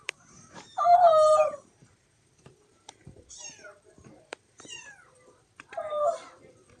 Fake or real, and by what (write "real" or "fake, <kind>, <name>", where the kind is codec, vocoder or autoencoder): fake, vocoder, BigVGAN v2